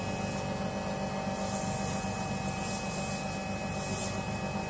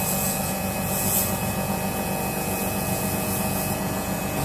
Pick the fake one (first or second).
second